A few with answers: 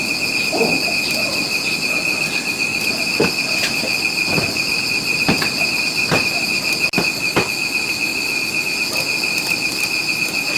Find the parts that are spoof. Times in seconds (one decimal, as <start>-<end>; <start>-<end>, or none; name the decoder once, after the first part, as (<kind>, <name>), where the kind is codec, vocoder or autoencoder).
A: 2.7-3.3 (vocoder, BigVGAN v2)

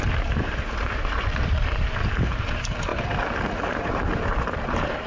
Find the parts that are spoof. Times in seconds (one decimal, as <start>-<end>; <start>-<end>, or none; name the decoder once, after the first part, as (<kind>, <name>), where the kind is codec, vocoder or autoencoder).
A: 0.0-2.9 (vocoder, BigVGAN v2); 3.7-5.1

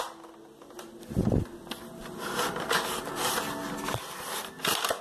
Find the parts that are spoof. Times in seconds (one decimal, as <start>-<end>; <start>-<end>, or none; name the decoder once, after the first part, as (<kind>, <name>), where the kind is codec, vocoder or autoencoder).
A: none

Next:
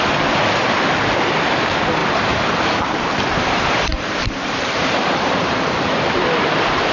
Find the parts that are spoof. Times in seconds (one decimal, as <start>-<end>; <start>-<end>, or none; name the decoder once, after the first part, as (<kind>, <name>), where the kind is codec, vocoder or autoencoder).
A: 2.0-6.1 (vocoder, BigVGAN v2)

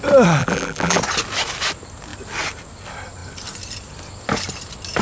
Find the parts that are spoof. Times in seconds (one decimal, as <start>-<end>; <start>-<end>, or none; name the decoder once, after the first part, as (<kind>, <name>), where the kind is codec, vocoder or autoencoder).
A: 0.4-1.0 (vocoder, BigVGAN v2)

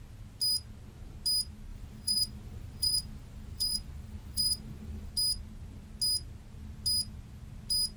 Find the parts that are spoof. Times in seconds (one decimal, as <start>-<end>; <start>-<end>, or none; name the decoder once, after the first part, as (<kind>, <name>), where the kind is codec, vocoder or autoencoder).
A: 1.7-5.1 (vocoder, BigVGAN v2)

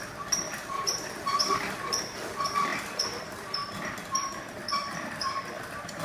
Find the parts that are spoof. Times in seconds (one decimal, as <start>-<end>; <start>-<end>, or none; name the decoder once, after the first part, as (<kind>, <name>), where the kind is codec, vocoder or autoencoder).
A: 0.0-6.0 (vocoder, BigVGAN v2)